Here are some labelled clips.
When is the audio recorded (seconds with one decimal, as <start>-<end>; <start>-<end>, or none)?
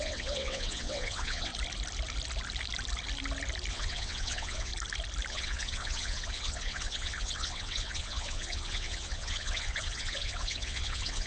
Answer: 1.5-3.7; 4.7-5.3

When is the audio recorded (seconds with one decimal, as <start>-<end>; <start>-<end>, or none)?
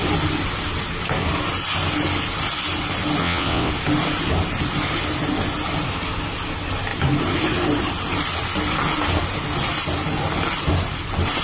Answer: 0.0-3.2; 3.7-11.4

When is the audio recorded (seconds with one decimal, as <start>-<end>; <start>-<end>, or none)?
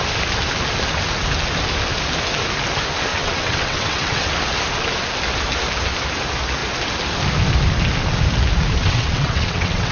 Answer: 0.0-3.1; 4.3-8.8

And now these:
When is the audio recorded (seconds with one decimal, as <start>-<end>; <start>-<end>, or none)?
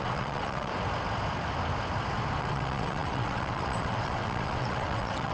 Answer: 0.7-2.4